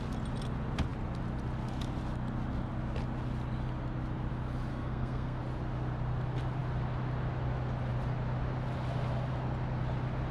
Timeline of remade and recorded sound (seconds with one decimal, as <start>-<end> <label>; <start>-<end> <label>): 0.0-4.7 recorded; 4.7-5.4 remade; 5.4-10.3 recorded